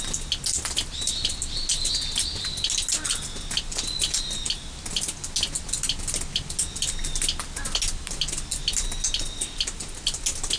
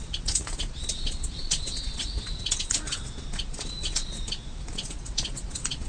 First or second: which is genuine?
first